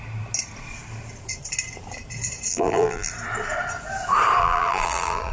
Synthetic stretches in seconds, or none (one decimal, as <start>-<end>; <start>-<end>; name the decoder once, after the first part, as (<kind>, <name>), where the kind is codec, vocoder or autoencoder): 2.5-3.1 (vocoder, BigVGAN v2); 4.4-5.3

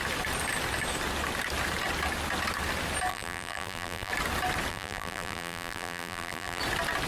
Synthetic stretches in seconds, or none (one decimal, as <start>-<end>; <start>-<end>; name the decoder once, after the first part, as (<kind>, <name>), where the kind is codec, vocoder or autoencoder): 3.1-4.1 (vocoder, BigVGAN v2); 4.7-6.6

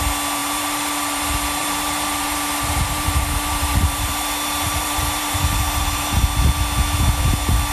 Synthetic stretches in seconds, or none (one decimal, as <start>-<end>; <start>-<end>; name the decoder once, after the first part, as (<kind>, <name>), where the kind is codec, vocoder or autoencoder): 0.4-1.2 (vocoder, BigVGAN v2); 1.6-6.2

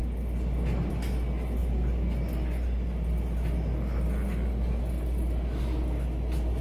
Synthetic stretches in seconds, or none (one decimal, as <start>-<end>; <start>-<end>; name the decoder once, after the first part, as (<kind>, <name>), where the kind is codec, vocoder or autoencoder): none

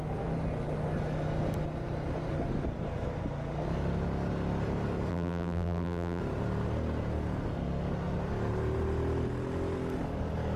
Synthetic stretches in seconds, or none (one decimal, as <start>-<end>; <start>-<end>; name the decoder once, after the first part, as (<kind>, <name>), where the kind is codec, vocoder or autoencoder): 5.1-6.2 (vocoder, BigVGAN v2)

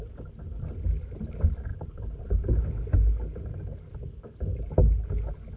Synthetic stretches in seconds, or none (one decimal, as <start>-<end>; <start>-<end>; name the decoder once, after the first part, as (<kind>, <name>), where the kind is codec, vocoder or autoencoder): 1.7-2.6 (vocoder, BigVGAN v2)